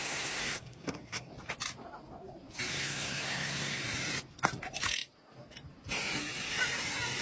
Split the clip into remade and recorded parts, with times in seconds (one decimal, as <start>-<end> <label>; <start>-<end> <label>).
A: 0.0-1.3 remade; 1.3-2.7 recorded; 2.7-3.8 remade; 3.8-7.2 recorded